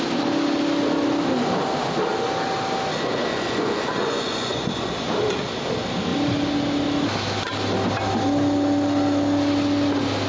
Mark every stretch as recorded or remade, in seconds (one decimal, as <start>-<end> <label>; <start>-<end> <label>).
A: 0.0-3.3 recorded; 3.3-4.9 remade; 4.9-10.3 recorded